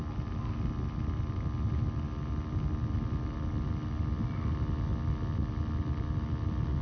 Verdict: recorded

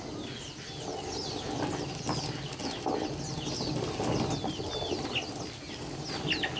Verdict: recorded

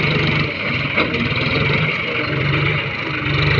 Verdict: recorded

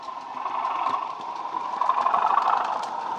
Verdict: recorded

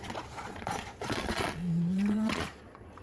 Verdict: remade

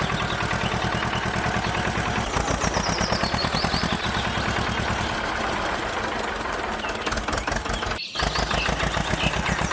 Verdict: recorded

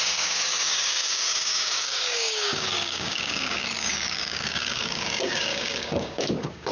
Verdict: remade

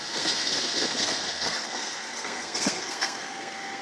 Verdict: remade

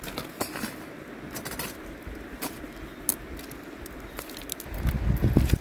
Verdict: recorded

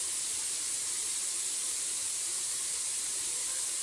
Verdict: remade